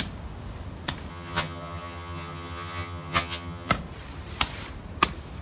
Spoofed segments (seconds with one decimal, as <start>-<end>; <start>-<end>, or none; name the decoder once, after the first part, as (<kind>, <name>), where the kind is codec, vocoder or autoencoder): 1.1-3.7 (vocoder, HiFi-GAN)